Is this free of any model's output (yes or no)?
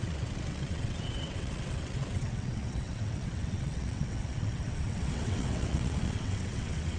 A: no